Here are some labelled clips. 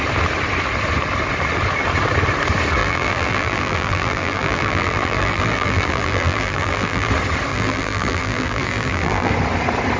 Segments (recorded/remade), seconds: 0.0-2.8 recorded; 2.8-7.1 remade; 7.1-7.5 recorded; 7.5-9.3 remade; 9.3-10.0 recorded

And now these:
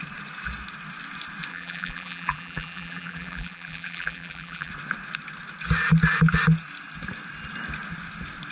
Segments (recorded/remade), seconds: 0.0-1.5 recorded; 1.5-4.7 remade; 4.7-8.5 recorded

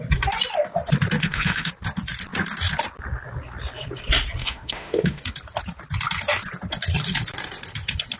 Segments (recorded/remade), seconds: 0.0-1.2 recorded; 1.2-1.7 remade; 1.7-4.4 recorded; 4.4-5.2 remade; 5.2-8.2 recorded

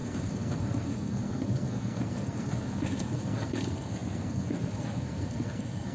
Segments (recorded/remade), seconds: 0.0-5.9 remade

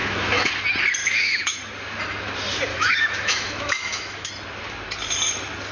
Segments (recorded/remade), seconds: 0.0-0.5 remade; 0.5-1.0 recorded; 1.0-1.6 remade; 1.6-2.7 recorded; 2.7-4.3 remade; 4.3-5.7 recorded

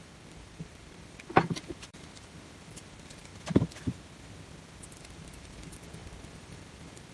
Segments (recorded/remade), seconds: 0.0-3.3 remade; 3.3-5.0 recorded; 5.0-7.1 remade